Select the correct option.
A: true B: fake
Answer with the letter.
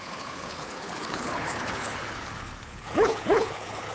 B